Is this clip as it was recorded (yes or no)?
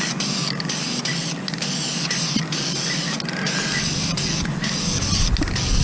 yes